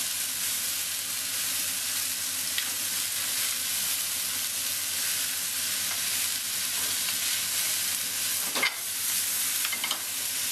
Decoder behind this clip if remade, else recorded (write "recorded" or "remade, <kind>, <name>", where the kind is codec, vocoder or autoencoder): recorded